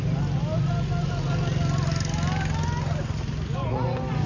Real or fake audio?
real